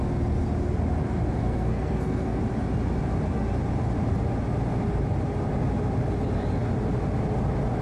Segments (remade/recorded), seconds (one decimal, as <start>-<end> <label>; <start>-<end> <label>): 0.0-1.4 recorded; 1.4-2.4 remade; 2.4-7.8 recorded